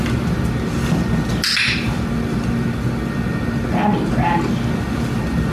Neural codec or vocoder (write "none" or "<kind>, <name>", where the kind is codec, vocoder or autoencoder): none